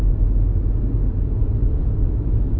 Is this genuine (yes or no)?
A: yes